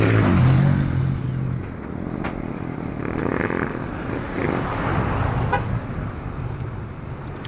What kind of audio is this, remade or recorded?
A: recorded